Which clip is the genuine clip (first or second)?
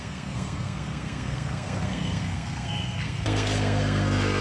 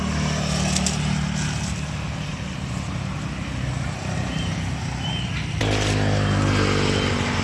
second